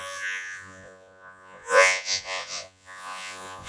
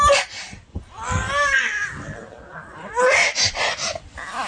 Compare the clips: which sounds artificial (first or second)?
first